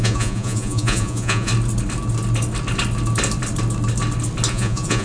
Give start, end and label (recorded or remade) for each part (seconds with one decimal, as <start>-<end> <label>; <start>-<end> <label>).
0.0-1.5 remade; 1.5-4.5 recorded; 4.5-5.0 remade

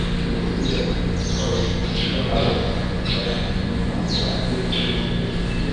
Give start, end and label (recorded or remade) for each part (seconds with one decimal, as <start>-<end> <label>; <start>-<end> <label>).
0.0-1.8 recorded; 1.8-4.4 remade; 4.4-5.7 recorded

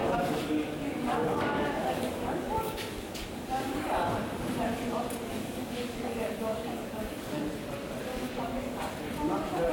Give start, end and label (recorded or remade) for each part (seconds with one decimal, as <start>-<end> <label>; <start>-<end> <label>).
0.0-4.1 remade; 4.1-5.3 recorded; 5.3-7.4 remade; 7.4-8.1 recorded; 8.1-8.8 remade; 8.8-9.7 recorded

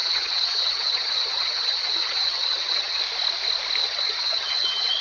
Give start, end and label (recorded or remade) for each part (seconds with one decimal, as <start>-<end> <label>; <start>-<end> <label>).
0.0-3.0 remade; 3.0-3.8 recorded; 3.8-5.0 remade

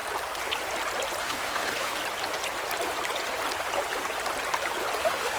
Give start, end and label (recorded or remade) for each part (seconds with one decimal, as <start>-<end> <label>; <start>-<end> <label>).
0.0-1.2 recorded; 1.2-2.0 remade; 2.0-5.0 recorded; 5.0-5.4 remade

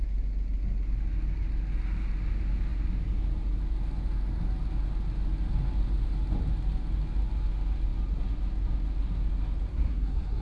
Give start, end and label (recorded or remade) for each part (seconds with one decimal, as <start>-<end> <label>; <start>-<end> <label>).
0.0-9.7 recorded; 9.7-10.4 remade